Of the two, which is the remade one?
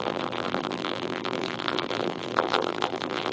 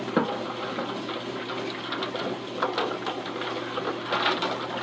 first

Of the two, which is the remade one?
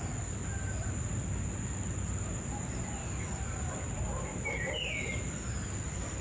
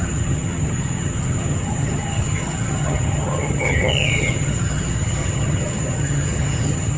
second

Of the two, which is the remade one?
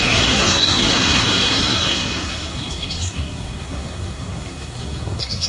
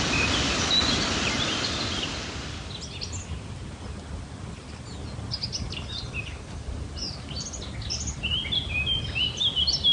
first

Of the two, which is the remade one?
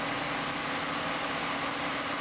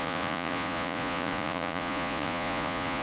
second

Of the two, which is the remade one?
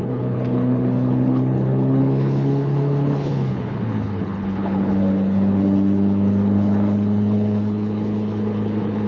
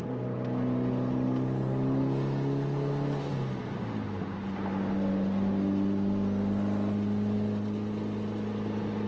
first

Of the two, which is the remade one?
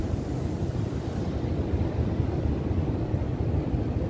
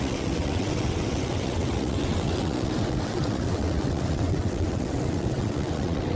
second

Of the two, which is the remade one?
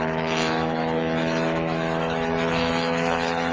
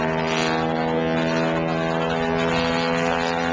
first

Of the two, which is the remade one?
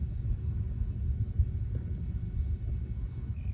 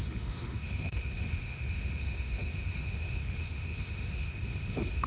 second